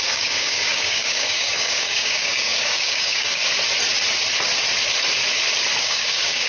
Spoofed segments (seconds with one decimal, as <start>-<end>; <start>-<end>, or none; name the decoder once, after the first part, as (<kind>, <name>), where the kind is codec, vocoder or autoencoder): 0.0-3.4 (codec, DAC); 5.8-6.5